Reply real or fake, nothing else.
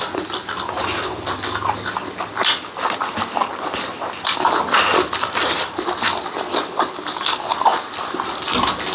real